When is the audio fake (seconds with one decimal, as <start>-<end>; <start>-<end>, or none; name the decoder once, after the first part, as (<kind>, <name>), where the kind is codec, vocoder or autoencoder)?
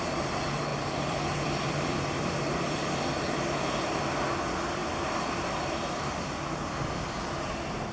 0.7-2.8 (vocoder, BigVGAN v2)